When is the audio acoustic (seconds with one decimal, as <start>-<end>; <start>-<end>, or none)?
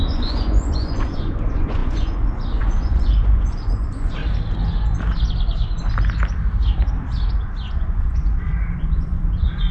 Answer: 4.2-7.7